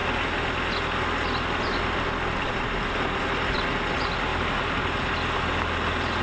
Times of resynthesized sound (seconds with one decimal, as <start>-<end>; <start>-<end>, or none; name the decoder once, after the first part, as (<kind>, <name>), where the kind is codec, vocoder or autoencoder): none

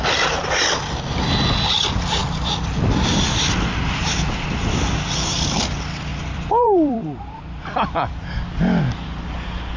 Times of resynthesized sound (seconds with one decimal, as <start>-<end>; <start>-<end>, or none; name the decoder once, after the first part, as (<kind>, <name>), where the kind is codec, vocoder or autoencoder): 2.2-3.1 (vocoder, BigVGAN v2); 6.1-8.3

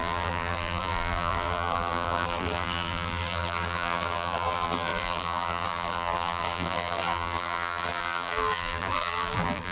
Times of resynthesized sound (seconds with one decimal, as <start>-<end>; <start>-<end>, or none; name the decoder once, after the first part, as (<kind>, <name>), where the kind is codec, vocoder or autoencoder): 0.0-9.7 (vocoder, BigVGAN v2)